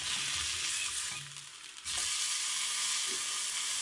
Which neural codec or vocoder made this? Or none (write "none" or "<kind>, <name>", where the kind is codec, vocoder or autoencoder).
none